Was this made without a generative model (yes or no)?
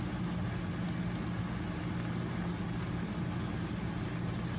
yes